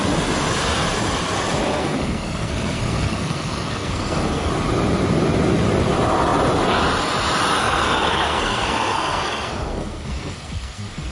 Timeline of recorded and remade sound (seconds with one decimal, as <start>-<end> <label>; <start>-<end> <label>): 0.0-1.8 recorded; 1.8-4.5 remade; 4.5-7.6 recorded; 7.6-11.1 remade